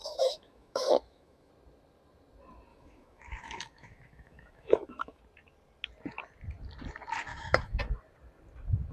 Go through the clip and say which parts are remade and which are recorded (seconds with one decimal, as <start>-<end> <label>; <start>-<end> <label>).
0.0-1.5 remade; 1.5-2.7 recorded; 2.7-5.2 remade; 5.2-7.3 recorded; 7.3-7.8 remade; 7.8-8.9 recorded